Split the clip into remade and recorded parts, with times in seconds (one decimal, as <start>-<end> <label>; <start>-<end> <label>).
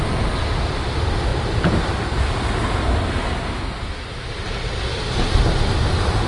0.0-6.3 recorded